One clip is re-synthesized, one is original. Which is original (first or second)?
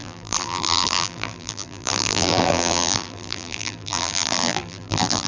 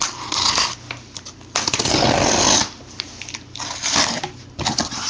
second